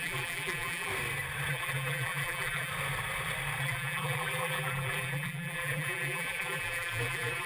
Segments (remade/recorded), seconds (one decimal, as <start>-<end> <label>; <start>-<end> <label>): 0.0-0.9 remade; 0.9-1.5 recorded; 1.5-2.7 remade; 2.7-3.6 recorded; 3.6-7.5 remade